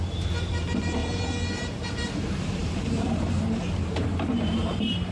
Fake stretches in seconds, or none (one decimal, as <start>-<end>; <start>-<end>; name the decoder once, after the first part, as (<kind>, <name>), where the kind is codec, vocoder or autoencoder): 0.0-5.1 (vocoder, BigVGAN v2)